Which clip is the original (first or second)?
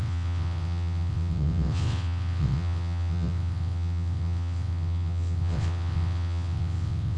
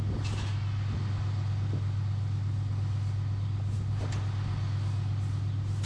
second